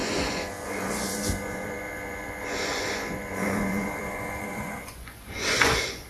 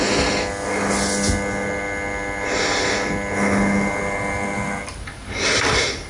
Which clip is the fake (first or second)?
first